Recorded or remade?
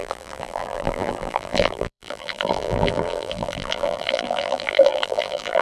remade